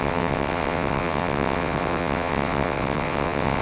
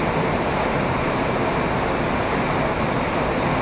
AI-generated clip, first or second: first